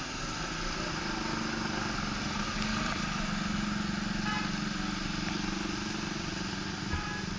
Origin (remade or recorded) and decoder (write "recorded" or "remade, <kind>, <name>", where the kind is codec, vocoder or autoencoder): recorded